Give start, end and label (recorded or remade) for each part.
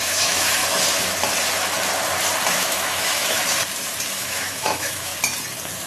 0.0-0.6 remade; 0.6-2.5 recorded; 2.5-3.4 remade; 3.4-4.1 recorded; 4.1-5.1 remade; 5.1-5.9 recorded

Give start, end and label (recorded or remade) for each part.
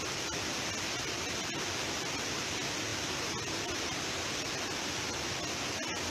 0.0-6.1 recorded